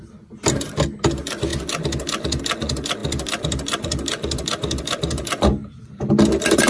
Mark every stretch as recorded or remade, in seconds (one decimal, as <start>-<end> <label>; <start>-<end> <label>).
0.0-3.0 recorded; 3.0-6.1 remade; 6.1-6.7 recorded